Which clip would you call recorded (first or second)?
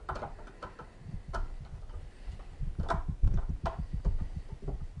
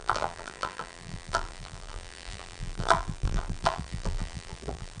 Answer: first